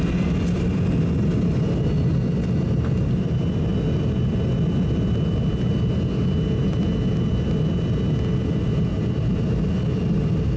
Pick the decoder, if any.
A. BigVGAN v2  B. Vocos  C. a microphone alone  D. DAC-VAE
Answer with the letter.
C